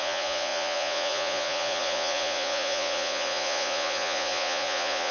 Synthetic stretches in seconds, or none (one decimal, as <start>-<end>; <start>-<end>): 0.0-5.1